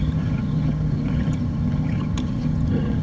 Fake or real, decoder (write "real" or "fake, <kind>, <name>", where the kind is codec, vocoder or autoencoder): fake, vocoder, HiFi-GAN